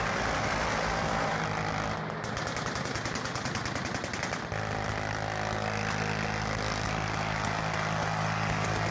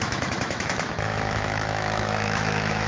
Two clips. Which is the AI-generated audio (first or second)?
second